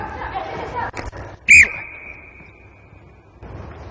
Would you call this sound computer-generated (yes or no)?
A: no